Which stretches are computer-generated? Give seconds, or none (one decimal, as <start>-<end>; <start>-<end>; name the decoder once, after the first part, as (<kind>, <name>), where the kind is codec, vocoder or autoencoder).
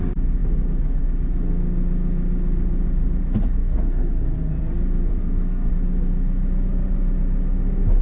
3.6-4.1 (codec, SNAC); 5.1-5.7